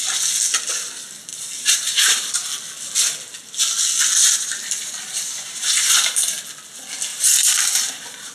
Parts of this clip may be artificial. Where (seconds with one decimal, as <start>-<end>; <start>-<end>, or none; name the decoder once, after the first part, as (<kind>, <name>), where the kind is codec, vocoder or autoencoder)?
1.3-2.3 (vocoder, BigVGAN v2); 4.2-6.3; 7.1-8.3